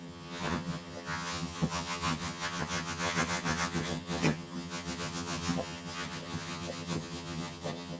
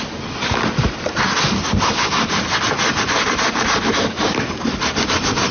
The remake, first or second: first